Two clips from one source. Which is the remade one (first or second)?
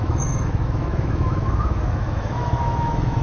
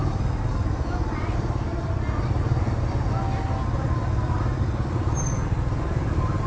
first